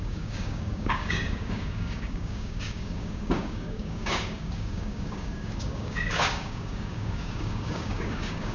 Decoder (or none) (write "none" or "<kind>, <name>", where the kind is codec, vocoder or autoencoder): codec, DAC